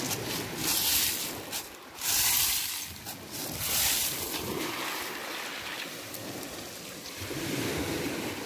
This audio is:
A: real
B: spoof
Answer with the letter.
A